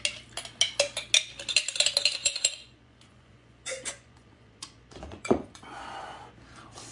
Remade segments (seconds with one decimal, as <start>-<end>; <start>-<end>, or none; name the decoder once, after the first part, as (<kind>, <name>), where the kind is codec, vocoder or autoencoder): 2.2-6.3 (vocoder, Vocos)